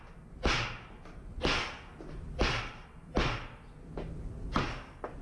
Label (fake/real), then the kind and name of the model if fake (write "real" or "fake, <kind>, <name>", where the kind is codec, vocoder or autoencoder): real